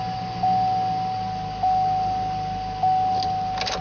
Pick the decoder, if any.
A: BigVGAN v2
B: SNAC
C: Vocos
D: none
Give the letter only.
D